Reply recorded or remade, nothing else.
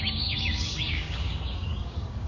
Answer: remade